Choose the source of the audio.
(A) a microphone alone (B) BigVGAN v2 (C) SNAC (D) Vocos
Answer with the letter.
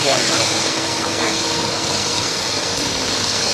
C